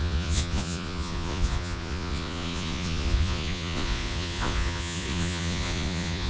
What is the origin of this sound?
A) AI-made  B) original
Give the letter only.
A